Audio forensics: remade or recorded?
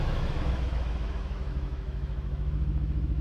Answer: remade